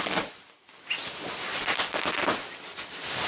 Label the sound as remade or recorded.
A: recorded